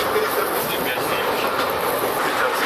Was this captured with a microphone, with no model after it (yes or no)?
yes